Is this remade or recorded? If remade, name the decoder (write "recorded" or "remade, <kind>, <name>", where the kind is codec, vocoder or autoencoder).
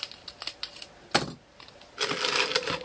recorded